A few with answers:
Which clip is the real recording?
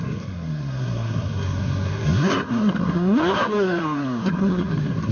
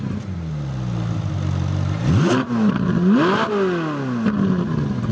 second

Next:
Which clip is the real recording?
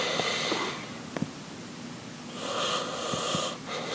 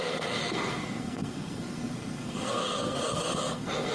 first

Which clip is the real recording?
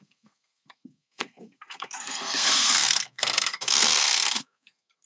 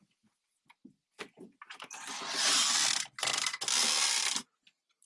second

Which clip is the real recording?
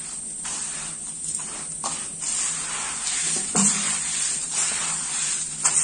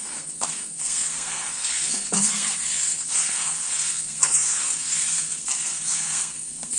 first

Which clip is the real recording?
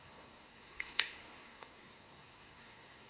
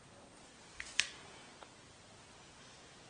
second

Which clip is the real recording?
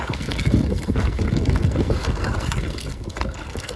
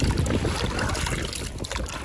second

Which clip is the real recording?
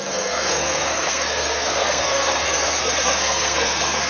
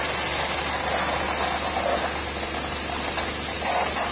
second